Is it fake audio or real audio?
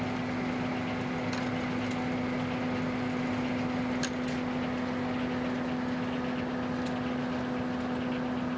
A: real